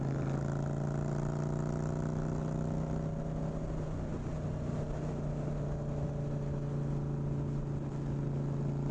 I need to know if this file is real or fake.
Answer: real